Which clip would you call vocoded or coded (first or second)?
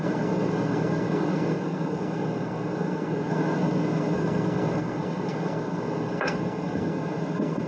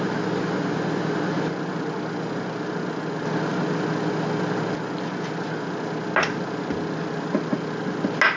first